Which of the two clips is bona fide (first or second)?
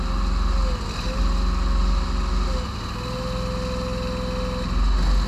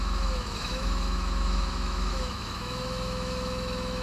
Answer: first